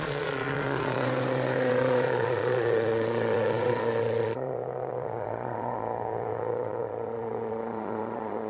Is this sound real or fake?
fake